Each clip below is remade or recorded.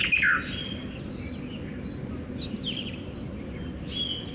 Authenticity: recorded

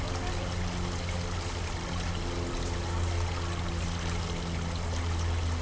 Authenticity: recorded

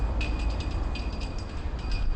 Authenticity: recorded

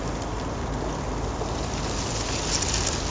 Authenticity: recorded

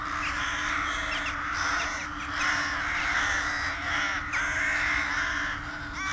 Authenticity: recorded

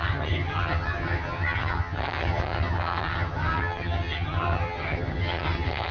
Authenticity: remade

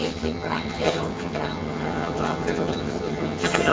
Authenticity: remade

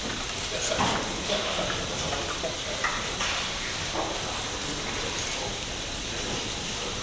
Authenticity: recorded